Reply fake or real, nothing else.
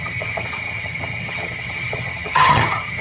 fake